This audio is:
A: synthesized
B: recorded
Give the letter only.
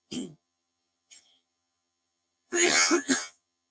A